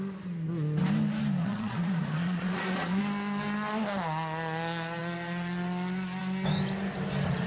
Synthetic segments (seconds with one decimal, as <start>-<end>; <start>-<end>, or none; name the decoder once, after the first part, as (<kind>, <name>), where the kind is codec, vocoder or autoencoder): 1.4-3.0 (vocoder, Vocos)